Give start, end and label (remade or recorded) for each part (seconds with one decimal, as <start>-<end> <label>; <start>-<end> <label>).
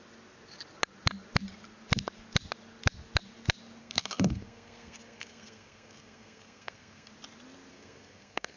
0.0-3.8 recorded; 3.8-7.1 remade; 7.1-7.7 recorded; 7.7-8.6 remade